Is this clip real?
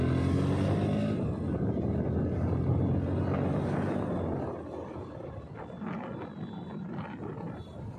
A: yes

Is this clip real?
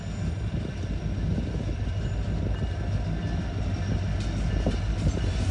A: yes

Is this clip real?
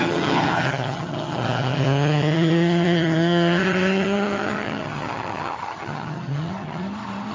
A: no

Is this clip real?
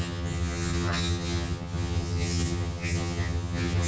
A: no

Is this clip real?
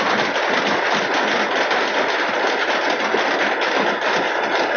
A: yes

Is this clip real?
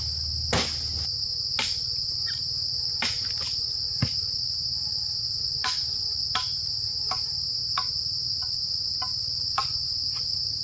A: yes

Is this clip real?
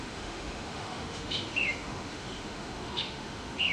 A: no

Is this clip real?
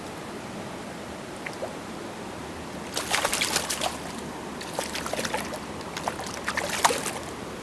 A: yes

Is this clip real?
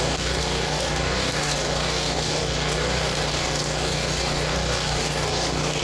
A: no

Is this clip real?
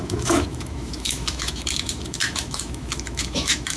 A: no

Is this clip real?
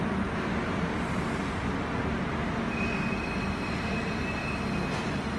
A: yes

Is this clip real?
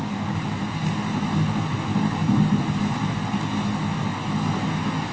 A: yes